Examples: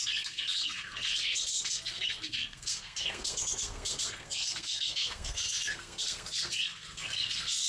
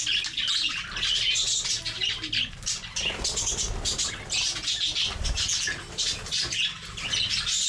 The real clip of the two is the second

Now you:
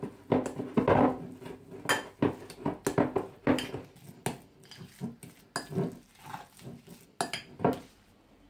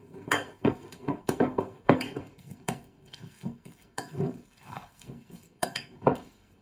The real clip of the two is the first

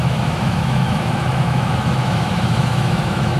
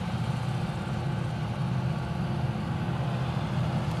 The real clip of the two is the second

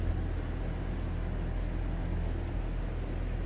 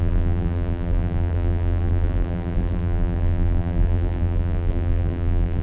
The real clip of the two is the first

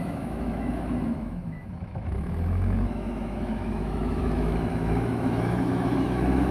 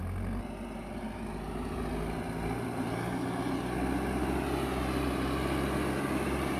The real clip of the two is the second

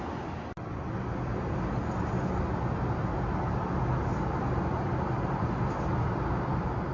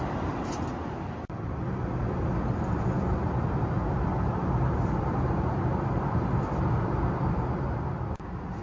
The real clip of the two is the first